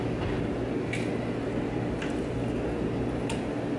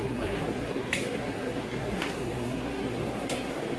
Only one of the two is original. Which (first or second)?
first